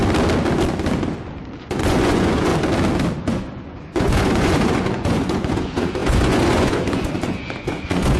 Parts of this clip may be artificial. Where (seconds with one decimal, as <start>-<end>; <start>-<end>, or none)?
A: 1.6-2.5; 3.2-8.2